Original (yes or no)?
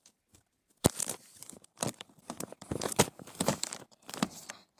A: no